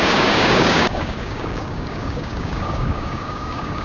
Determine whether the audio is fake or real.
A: fake